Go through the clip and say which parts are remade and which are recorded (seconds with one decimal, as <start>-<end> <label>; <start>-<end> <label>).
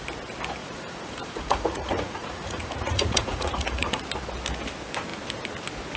0.0-0.6 recorded; 0.6-4.0 remade; 4.0-6.0 recorded